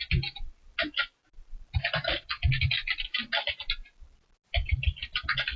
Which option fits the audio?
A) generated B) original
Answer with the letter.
B